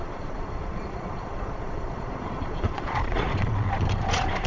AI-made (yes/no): yes